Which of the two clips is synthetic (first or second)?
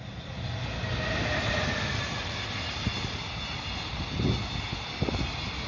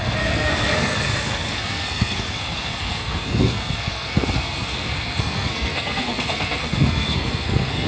second